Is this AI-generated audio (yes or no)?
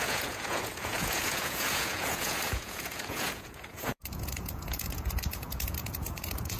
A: yes